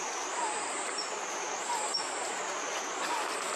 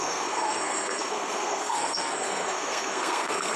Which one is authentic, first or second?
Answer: first